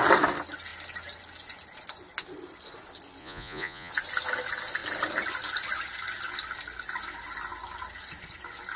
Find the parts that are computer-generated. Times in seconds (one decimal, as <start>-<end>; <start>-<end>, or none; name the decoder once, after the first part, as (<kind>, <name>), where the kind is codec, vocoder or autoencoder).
3.2-3.9 (vocoder, Vocos)